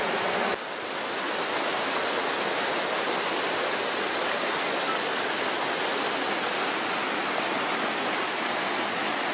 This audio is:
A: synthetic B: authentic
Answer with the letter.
B